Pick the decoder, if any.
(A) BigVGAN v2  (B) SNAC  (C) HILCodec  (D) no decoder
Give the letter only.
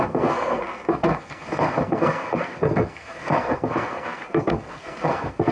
B